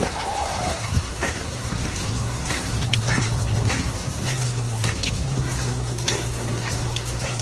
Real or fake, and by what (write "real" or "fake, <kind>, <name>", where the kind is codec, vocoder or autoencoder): fake, codec, SNAC